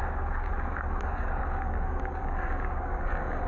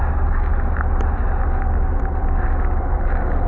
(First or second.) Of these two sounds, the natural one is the second